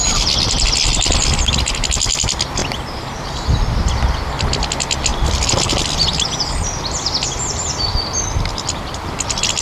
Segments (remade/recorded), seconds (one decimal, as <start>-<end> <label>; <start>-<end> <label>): 0.0-2.6 remade; 2.6-3.2 recorded; 3.2-9.6 remade